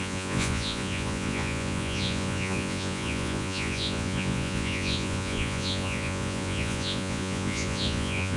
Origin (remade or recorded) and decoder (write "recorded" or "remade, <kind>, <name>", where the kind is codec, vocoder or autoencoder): remade, vocoder, Vocos